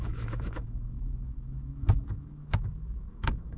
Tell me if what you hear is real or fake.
fake